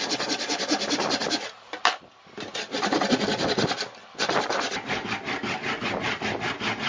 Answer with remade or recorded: recorded